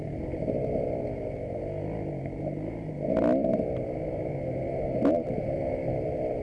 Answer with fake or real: real